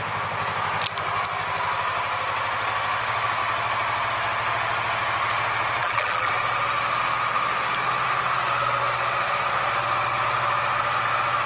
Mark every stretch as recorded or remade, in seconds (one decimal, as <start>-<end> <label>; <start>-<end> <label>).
0.0-5.8 recorded; 5.8-6.3 remade; 6.3-11.5 recorded